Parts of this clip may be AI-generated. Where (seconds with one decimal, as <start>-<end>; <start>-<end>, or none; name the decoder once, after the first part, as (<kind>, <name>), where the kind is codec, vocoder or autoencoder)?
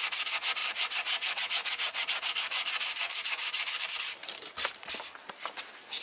0.6-3.8 (vocoder, BigVGAN v2)